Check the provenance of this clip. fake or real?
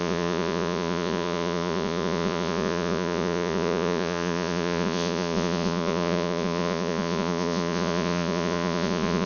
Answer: fake